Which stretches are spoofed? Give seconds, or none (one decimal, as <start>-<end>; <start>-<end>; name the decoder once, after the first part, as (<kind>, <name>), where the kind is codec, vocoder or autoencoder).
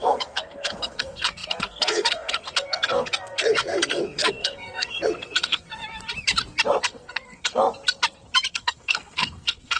0.0-5.8 (codec, SNAC); 6.8-7.6; 8.5-9.8